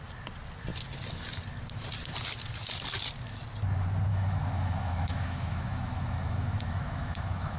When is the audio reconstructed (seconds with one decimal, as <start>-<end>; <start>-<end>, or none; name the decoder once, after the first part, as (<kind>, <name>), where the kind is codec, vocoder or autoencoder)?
4.1-7.6 (autoencoder, DAC-VAE)